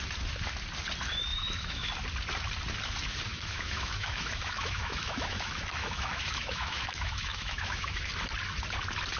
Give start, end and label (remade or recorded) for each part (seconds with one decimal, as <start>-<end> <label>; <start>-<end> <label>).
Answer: 0.0-1.3 recorded; 1.3-1.9 remade; 1.9-3.3 recorded; 3.3-8.1 remade; 8.1-9.2 recorded